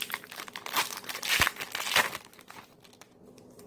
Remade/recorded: recorded